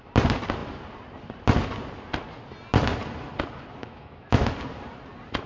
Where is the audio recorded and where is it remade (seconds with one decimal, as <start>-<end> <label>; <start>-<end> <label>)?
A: 0.0-3.8 recorded; 3.8-4.5 remade; 4.5-5.5 recorded